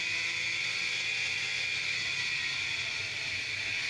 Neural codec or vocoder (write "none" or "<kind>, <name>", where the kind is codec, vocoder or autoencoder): none